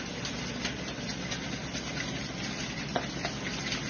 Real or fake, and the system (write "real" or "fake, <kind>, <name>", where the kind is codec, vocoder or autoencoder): real